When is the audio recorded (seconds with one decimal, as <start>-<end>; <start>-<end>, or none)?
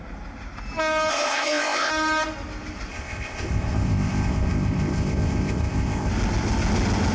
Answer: 0.0-1.1; 1.9-2.9; 6.1-7.1